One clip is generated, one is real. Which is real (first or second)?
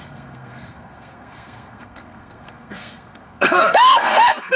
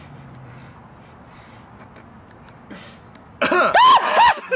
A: second